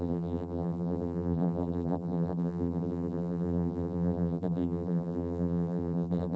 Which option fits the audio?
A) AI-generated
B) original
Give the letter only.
A